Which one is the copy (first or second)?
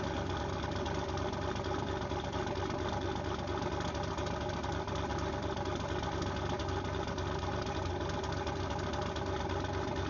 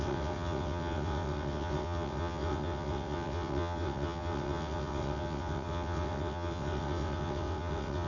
second